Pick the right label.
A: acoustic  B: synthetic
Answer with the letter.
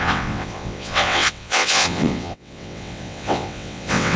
B